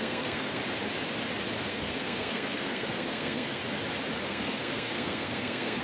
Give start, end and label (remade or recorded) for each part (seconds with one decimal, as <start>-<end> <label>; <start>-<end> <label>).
0.0-0.6 remade; 0.6-1.7 recorded; 1.7-3.6 remade; 3.6-4.2 recorded; 4.2-5.8 remade